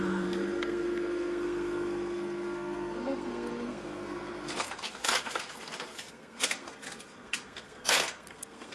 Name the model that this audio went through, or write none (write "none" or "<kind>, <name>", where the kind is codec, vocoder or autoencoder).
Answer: codec, SNAC